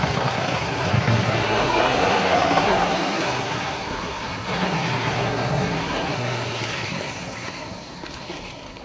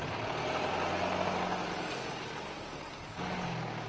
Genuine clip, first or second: second